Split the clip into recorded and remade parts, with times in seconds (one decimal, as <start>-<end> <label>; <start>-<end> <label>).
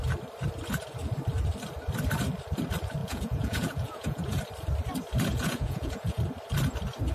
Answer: 0.0-3.0 recorded; 3.0-4.4 remade; 4.4-5.3 recorded; 5.3-6.2 remade; 6.2-7.1 recorded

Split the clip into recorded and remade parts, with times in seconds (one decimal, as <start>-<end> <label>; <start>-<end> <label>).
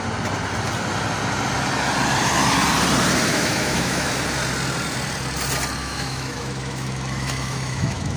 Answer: 0.0-3.3 recorded; 3.3-4.1 remade; 4.1-5.8 recorded; 5.8-8.2 remade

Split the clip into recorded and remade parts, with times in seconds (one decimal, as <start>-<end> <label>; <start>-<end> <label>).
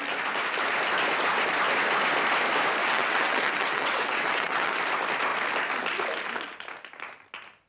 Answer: 0.0-2.8 recorded; 2.8-4.8 remade; 4.8-7.7 recorded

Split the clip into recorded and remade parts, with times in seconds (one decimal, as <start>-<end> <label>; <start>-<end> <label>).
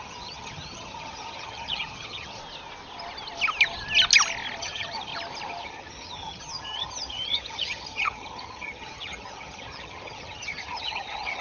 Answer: 0.0-2.4 remade; 2.4-4.6 recorded; 4.6-5.1 remade; 5.1-5.6 recorded; 5.6-11.4 remade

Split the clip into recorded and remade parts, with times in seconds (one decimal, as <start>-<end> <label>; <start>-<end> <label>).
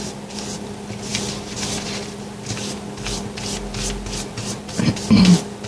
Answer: 0.0-5.7 recorded